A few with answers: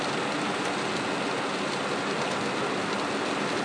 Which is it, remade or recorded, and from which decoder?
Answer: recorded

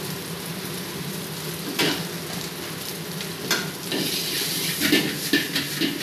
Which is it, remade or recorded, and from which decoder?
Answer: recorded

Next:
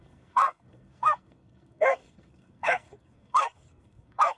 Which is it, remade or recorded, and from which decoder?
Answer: remade, codec, SNAC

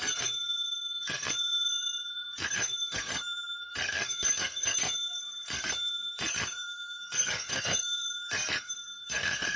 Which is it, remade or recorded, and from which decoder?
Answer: remade, codec, SNAC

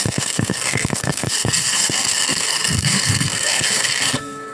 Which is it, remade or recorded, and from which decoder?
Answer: remade, codec, SNAC